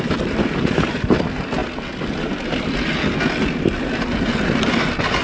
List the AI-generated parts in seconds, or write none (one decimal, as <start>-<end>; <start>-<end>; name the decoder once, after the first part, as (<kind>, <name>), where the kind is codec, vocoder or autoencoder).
none